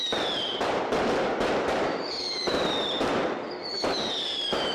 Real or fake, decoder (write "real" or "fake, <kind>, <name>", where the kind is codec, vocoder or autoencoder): fake, vocoder, BigVGAN v2